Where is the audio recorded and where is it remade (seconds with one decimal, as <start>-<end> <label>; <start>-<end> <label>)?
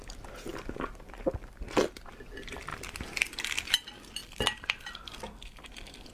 0.0-4.2 recorded; 4.2-6.1 remade